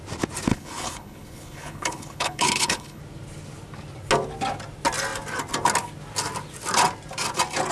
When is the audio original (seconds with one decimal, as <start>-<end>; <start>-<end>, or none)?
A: 0.0-0.5; 3.0-7.7